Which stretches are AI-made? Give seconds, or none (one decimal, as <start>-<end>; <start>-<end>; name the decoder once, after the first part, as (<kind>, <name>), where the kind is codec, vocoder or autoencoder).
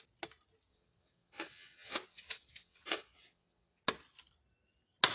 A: 0.7-3.8 (vocoder, WaveNeXt)